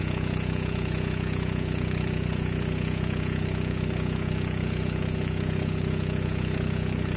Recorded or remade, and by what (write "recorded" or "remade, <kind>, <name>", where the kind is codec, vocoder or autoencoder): remade, vocoder, Vocos